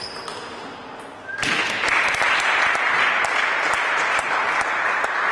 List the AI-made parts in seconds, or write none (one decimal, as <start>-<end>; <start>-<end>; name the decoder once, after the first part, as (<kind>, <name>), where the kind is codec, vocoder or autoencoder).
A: 1.8-5.3 (vocoder, BigVGAN v2)